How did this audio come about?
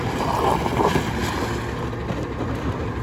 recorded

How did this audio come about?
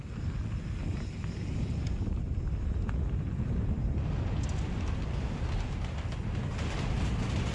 recorded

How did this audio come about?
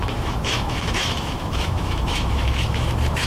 remade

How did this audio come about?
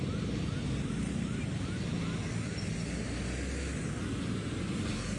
recorded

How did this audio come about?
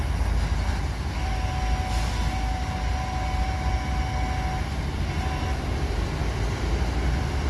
recorded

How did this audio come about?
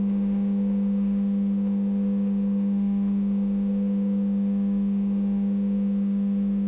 remade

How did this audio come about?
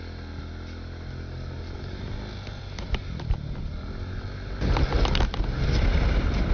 recorded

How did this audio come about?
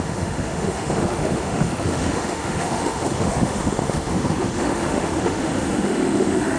remade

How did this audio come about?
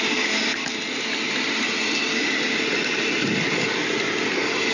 recorded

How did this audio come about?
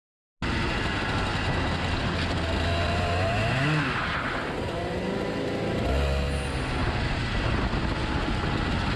recorded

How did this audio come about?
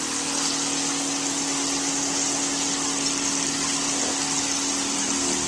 recorded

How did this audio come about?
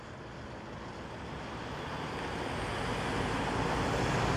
recorded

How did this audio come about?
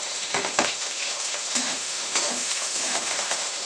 remade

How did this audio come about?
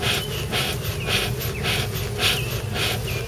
recorded